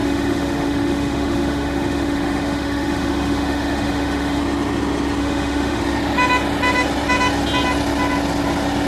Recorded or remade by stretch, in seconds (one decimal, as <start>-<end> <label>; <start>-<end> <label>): 0.0-4.4 remade; 4.4-5.2 recorded; 5.2-5.8 remade; 5.8-8.9 recorded